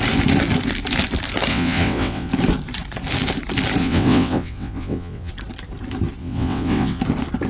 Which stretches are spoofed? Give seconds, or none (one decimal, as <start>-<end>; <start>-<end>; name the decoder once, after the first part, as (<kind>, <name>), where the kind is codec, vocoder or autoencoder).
1.5-2.3 (vocoder, WaveNeXt); 3.8-5.3; 6.2-7.0